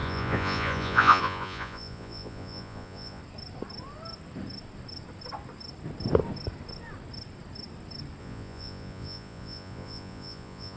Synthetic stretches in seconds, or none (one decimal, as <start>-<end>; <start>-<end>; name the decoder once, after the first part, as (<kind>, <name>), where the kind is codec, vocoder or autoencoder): 0.0-3.2 (vocoder, Vocos); 8.2-10.8